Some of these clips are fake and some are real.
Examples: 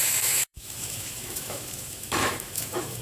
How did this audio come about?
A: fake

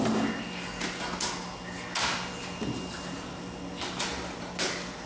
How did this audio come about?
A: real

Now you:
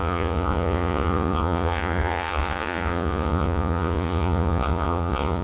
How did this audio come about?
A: fake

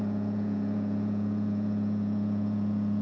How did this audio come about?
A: fake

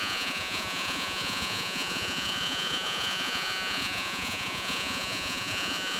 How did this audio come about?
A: fake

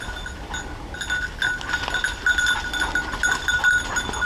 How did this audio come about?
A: real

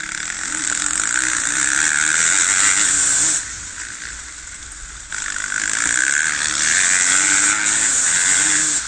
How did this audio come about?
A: real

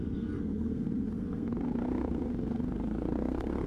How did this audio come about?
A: fake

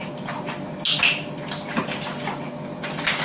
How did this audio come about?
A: real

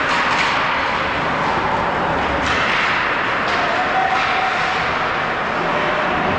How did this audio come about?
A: real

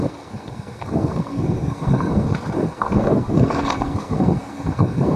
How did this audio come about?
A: fake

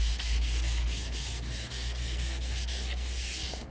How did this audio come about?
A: fake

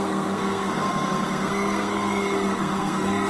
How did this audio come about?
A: fake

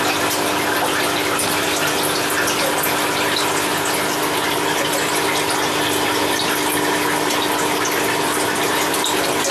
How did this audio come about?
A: real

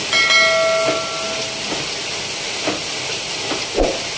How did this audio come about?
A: real